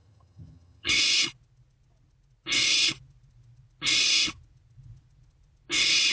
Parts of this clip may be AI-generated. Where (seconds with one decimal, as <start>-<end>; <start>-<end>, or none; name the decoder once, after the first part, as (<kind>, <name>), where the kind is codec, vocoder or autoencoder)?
0.0-1.0 (vocoder, HiFi-GAN)